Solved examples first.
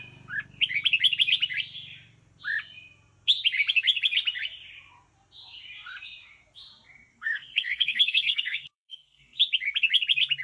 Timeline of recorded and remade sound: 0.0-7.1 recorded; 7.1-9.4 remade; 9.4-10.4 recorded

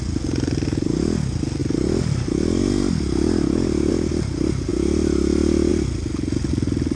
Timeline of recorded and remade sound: 0.0-7.0 recorded

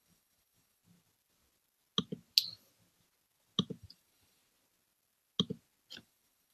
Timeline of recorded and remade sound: 0.0-0.8 remade; 0.8-3.8 recorded; 3.8-4.4 remade; 4.4-6.0 recorded; 6.0-6.5 remade

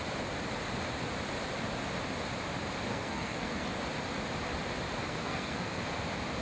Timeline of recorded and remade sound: 0.0-2.9 recorded; 2.9-3.7 remade; 3.7-5.0 recorded; 5.0-5.8 remade; 5.8-6.4 recorded

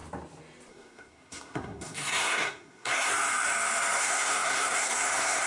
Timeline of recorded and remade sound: 0.0-0.7 recorded; 0.7-3.1 remade; 3.1-4.0 recorded; 4.0-5.5 remade

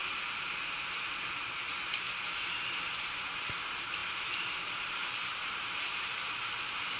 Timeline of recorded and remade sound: 0.0-7.0 recorded